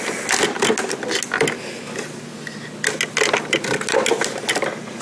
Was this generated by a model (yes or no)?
no